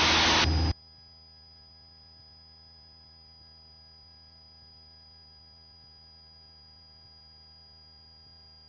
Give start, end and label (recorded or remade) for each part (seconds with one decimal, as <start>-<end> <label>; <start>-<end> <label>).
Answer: 0.0-8.7 recorded

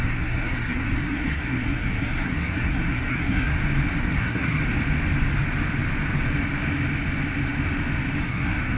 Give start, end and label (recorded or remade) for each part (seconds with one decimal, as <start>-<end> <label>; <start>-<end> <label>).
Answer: 0.0-3.5 remade; 3.5-4.0 recorded; 4.0-4.6 remade; 4.6-8.2 recorded; 8.2-8.8 remade

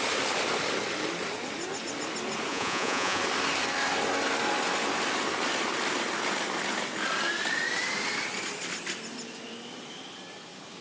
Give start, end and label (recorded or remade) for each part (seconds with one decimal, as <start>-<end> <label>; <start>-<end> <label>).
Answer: 0.0-2.5 recorded; 2.5-3.2 remade; 3.2-10.8 recorded

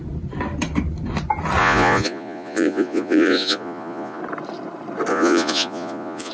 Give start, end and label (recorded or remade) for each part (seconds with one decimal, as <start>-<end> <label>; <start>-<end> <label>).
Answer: 0.0-1.6 recorded; 1.6-4.2 remade; 4.2-5.1 recorded; 5.1-6.3 remade

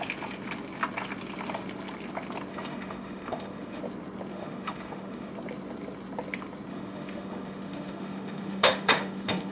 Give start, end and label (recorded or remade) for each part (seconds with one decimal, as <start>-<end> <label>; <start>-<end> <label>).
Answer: 0.0-2.5 recorded; 2.5-3.8 remade; 3.8-4.3 recorded; 4.3-5.3 remade; 5.3-6.7 recorded; 6.7-9.5 remade

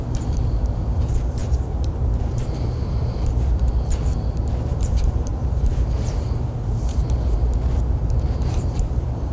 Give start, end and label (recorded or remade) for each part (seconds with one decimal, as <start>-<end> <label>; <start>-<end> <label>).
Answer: 0.0-9.3 remade

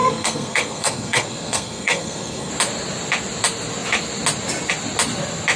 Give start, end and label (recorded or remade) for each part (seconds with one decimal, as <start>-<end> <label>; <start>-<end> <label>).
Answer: 0.0-2.5 remade; 2.5-5.6 recorded